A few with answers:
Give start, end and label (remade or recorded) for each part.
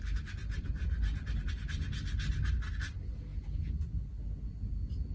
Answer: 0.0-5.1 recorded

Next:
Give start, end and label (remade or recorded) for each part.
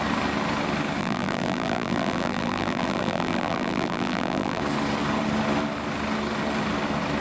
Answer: 0.0-1.0 recorded; 1.0-4.6 remade; 4.6-7.2 recorded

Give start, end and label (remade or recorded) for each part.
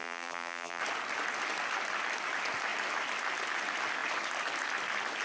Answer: 0.0-0.8 remade; 0.8-5.2 recorded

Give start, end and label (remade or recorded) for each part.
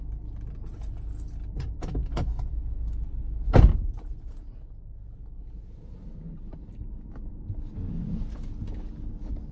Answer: 0.0-9.5 recorded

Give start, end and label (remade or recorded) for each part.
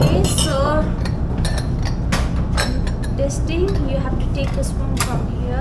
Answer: 0.0-0.5 recorded; 0.5-1.2 remade; 1.2-5.6 recorded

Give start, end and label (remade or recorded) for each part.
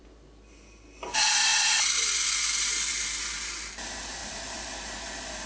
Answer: 0.0-4.2 recorded; 4.2-4.7 remade; 4.7-5.5 recorded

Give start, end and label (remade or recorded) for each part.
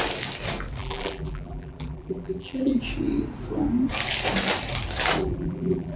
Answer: 0.0-0.8 recorded; 0.8-2.8 remade; 2.8-5.2 recorded; 5.2-6.0 remade